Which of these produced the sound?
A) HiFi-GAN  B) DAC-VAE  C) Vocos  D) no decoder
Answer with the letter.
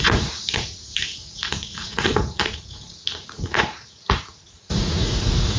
C